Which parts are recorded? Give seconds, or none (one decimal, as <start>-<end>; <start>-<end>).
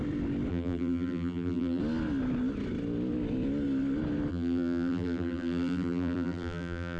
0.0-0.5; 1.8-4.3